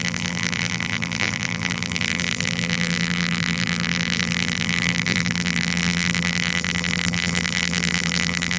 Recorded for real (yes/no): no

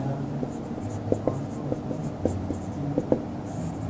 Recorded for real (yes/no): yes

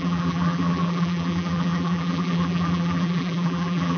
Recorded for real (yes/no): no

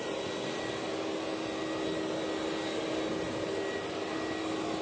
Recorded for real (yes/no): no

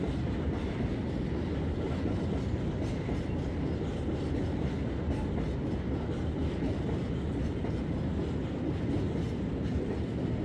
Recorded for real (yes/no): yes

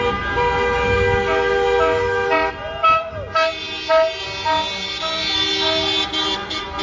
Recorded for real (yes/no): yes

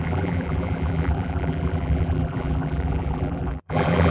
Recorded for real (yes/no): no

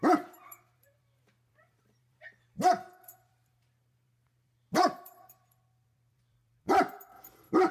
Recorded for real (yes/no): no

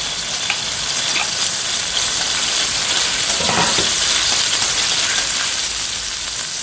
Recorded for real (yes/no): no